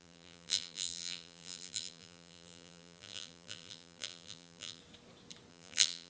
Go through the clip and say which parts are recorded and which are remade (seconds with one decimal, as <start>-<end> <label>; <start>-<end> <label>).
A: 0.0-4.8 remade; 4.8-5.5 recorded; 5.5-6.1 remade